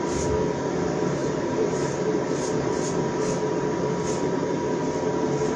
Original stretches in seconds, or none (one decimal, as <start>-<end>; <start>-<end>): 0.0-1.2; 2.7-5.6